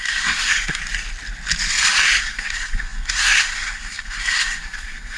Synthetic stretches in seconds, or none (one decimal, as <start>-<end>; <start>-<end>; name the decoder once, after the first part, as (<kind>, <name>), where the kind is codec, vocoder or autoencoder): 0.0-0.8 (codec, SNAC); 2.2-5.2